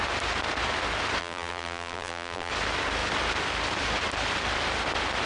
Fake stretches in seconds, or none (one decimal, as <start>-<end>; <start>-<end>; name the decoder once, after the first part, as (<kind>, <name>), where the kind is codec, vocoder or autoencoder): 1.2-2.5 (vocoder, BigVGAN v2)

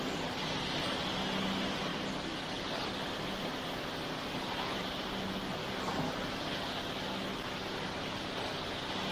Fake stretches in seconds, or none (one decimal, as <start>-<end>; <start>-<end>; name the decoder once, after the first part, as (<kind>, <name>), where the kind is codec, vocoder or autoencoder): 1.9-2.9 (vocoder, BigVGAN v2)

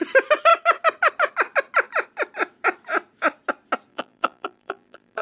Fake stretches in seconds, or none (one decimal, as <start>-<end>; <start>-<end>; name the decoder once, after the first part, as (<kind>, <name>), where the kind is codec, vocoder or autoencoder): 3.9-5.2 (vocoder, BigVGAN v2)